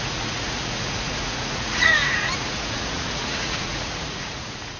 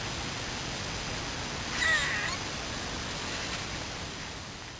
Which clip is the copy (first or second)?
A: first